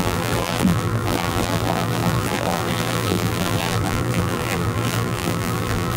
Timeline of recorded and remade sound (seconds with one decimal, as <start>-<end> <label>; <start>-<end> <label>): 0.0-6.0 remade